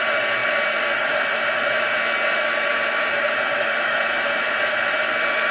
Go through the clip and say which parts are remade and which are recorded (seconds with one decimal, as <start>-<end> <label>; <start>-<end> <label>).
0.0-5.5 recorded